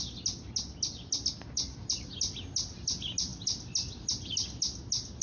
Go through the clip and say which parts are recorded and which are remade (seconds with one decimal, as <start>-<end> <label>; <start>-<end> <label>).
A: 0.0-5.2 recorded